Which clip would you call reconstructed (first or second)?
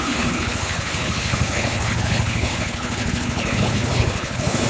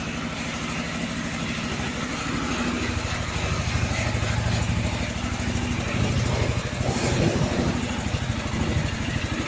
first